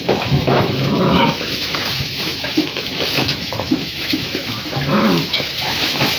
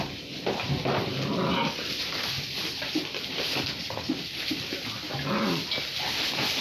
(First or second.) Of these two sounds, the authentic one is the second